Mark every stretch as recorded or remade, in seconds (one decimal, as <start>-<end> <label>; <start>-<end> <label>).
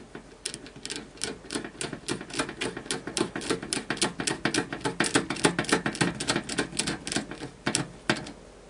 0.0-8.7 recorded